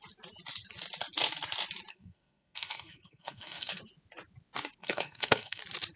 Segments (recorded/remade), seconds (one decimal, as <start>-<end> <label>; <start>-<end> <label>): 0.0-1.9 recorded; 1.9-3.8 remade; 3.8-4.8 recorded; 4.8-5.6 remade; 5.6-6.0 recorded